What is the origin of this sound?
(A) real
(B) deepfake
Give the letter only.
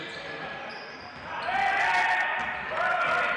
A